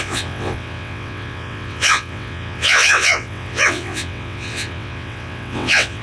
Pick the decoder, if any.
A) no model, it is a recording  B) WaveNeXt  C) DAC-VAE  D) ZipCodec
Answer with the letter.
B